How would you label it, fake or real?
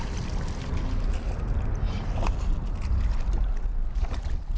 real